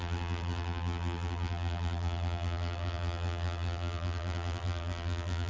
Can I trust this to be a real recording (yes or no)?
no